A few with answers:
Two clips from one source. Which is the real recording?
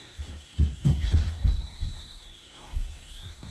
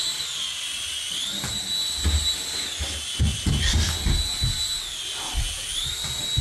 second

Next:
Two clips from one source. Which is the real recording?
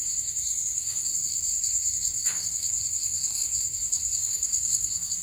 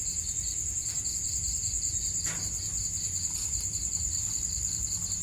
second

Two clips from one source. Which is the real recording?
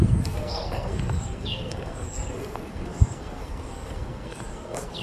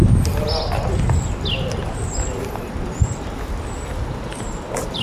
second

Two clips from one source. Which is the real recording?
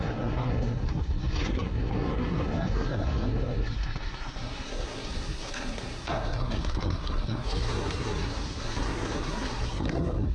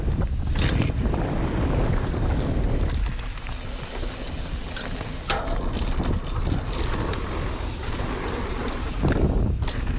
second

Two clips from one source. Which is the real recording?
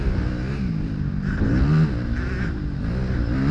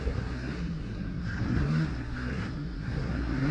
first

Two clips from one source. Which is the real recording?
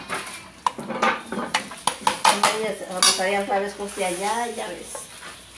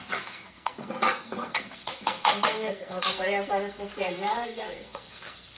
first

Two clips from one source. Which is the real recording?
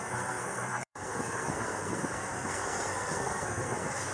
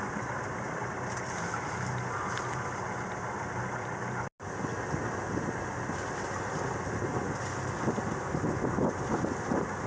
second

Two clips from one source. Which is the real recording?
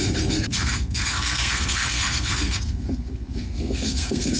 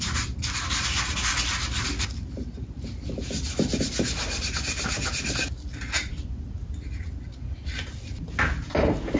second